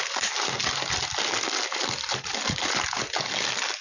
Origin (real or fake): real